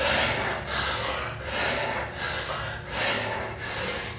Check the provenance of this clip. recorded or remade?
recorded